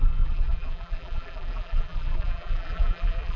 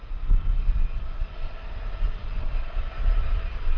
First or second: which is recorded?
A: second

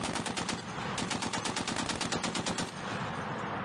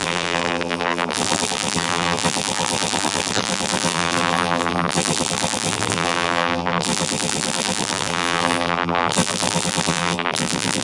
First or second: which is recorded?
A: first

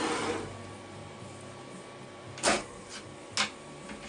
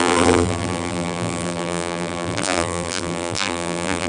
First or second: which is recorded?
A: first